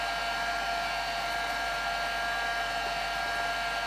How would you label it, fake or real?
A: real